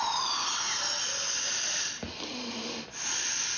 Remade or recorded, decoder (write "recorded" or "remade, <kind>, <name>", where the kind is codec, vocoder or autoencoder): recorded